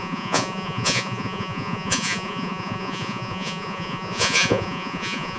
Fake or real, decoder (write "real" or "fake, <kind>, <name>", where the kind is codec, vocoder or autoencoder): fake, vocoder, Vocos